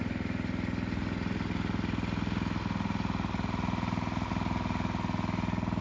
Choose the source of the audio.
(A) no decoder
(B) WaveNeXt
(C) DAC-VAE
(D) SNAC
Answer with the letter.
A